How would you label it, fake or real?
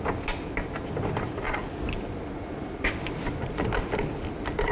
real